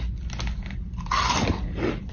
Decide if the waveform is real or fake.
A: real